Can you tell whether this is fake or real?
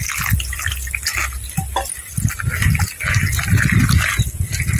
real